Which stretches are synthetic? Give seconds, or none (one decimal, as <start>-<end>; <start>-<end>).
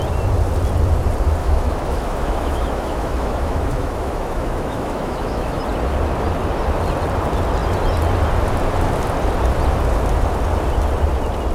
1.4-5.6